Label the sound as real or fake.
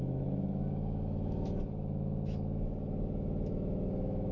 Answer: fake